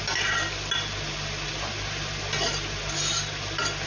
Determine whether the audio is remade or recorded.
recorded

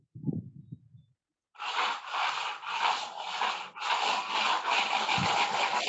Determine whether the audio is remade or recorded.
recorded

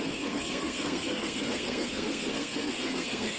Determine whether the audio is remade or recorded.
remade